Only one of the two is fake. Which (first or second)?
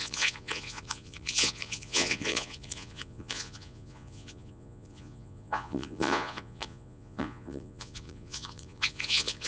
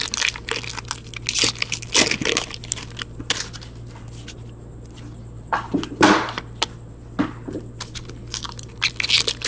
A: first